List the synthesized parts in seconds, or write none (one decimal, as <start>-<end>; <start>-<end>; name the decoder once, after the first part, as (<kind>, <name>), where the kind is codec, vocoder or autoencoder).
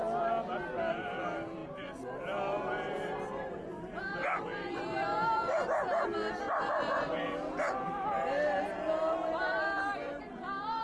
0.9-10.8 (vocoder, BigVGAN v2)